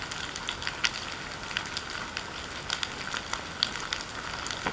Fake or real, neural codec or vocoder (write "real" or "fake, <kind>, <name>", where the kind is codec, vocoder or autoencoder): real